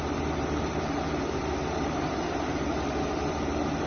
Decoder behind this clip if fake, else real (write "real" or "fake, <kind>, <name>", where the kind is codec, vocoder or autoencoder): fake, vocoder, BigVGAN v2